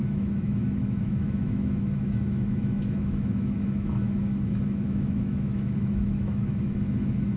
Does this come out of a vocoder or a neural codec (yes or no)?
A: yes